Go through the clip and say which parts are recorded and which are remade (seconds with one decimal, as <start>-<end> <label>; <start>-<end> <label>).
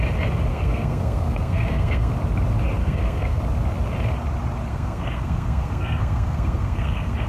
0.0-0.5 recorded; 0.5-2.1 remade; 2.1-2.8 recorded; 2.8-3.4 remade; 3.4-4.7 recorded; 4.7-7.3 remade